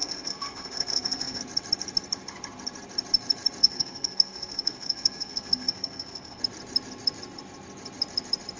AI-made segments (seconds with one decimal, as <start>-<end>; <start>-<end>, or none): 0.0-1.4; 3.6-6.4